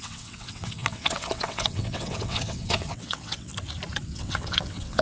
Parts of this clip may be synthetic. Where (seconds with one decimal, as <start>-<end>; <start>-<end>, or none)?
0.0-3.5; 4.0-5.0